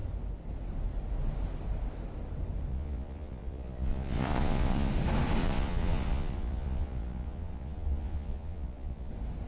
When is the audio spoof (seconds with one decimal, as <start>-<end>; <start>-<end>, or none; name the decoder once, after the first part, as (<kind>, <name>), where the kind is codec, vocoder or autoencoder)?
2.7-4.9 (vocoder, Vocos); 5.4-9.1